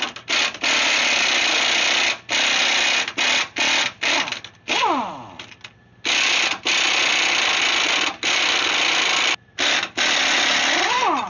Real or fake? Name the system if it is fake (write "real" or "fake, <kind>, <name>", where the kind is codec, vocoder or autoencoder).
real